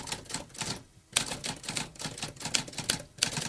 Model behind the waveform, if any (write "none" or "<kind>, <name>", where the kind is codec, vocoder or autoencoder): none